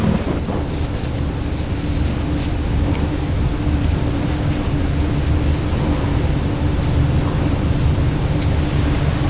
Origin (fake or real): real